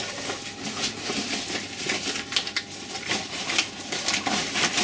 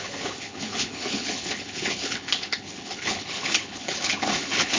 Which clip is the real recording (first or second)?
first